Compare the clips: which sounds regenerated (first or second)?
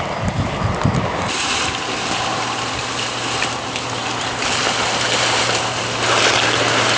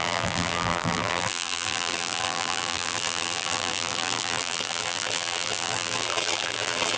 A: second